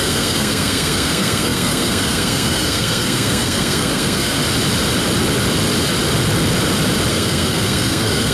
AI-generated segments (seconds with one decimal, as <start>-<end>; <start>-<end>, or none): 0.0-4.4; 7.1-8.3